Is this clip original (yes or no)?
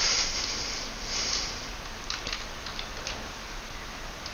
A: yes